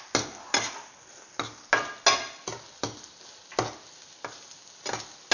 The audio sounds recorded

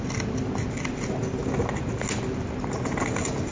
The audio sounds recorded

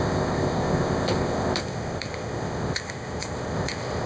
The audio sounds remade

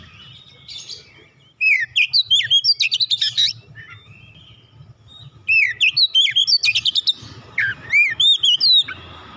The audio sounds recorded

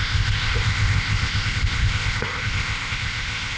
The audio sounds remade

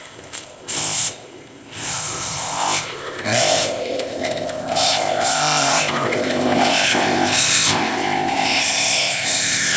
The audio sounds remade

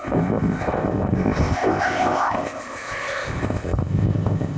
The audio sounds remade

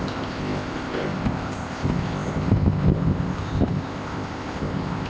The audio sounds remade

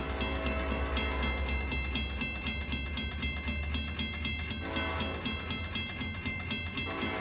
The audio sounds recorded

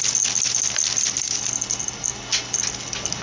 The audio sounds recorded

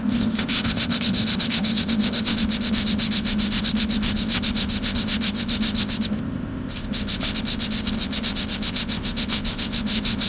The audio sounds remade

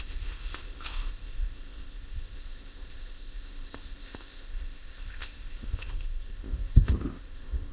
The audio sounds remade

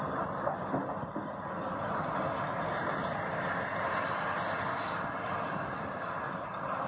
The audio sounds recorded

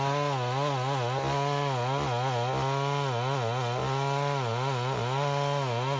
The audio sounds recorded